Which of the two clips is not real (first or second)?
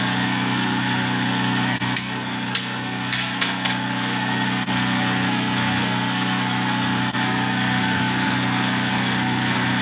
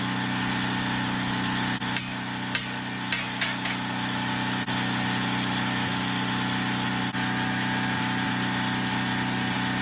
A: first